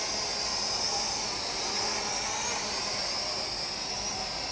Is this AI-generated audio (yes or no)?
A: no